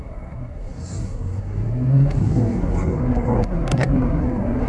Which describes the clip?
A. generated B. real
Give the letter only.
A